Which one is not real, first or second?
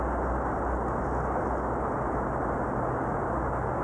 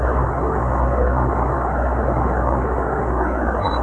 second